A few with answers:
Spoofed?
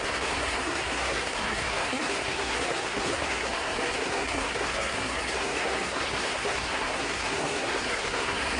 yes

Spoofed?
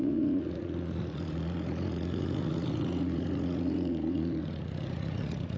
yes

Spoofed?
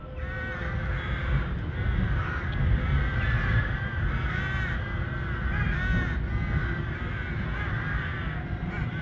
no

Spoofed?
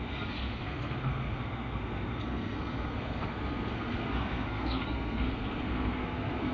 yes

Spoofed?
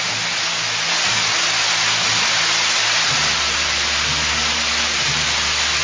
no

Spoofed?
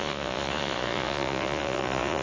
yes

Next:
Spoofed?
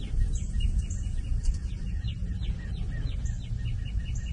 no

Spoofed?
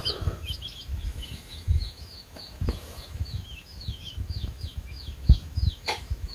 yes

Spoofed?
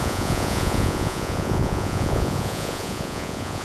yes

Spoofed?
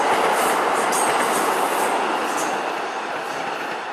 no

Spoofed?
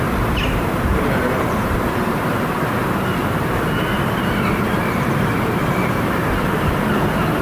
yes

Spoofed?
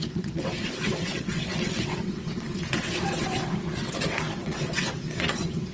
yes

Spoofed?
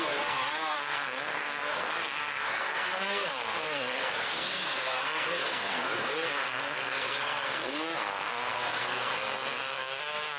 yes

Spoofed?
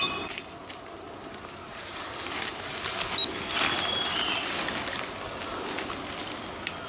no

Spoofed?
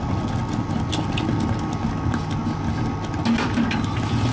no